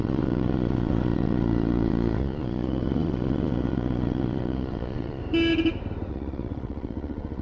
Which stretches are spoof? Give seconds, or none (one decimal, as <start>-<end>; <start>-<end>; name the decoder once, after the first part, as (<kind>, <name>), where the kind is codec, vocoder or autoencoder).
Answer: 0.0-5.2 (vocoder, Vocos); 6.1-7.4